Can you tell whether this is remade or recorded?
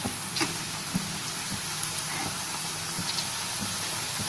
recorded